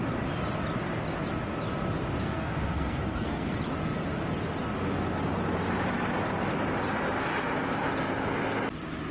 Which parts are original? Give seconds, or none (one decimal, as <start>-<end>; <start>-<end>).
0.0-2.2; 3.5-9.1